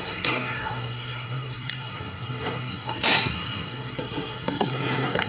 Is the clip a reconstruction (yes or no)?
yes